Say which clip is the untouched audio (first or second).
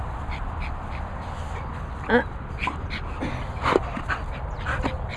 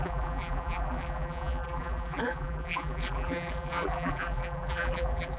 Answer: first